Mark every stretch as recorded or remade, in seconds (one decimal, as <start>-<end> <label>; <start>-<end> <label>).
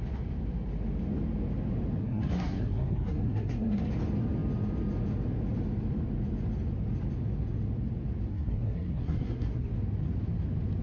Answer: 0.0-2.0 recorded; 2.0-3.9 remade; 3.9-8.3 recorded; 8.3-9.7 remade; 9.7-10.8 recorded